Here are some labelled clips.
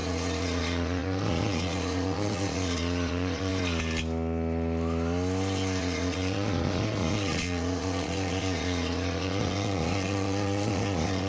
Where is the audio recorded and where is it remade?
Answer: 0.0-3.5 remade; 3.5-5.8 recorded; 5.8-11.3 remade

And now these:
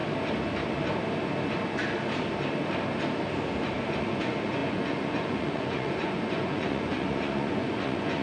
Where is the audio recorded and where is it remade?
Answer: 0.0-4.0 recorded; 4.0-8.2 remade

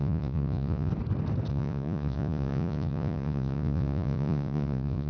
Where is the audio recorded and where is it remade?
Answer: 0.0-0.9 remade; 0.9-1.5 recorded; 1.5-5.1 remade